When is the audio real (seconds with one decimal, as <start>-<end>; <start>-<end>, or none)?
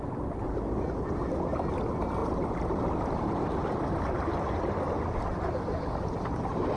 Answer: 0.0-6.8